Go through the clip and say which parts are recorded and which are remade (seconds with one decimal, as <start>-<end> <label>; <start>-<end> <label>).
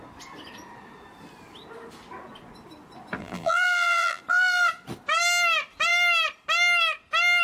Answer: 0.0-3.2 recorded; 3.2-4.2 remade; 4.2-7.4 recorded